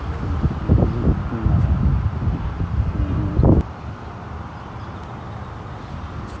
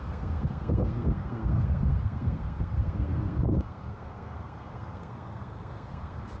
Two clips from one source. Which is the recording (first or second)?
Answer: first